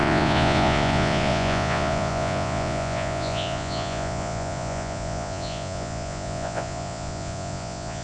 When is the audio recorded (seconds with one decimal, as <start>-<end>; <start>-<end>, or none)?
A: none